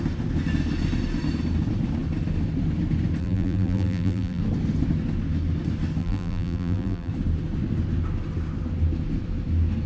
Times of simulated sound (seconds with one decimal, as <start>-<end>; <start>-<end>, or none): 3.2-4.4; 6.0-7.1